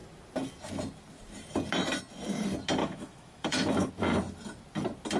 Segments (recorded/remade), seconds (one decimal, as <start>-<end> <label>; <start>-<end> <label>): 0.0-2.8 recorded; 2.8-3.9 remade; 3.9-5.2 recorded